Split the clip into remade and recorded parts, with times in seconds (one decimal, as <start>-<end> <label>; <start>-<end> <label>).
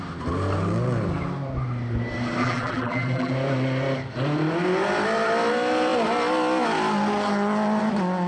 0.0-2.4 recorded; 2.4-3.3 remade; 3.3-8.3 recorded